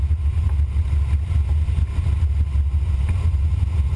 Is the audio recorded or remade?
recorded